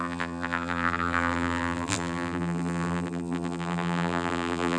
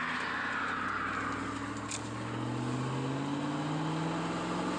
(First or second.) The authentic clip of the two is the second